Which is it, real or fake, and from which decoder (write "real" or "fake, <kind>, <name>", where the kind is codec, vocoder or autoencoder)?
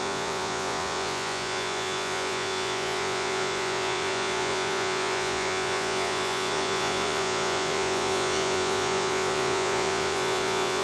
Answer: fake, vocoder, Vocos